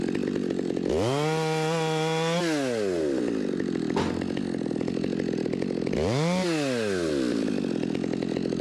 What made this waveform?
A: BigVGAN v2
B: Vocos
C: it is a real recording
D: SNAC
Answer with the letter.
C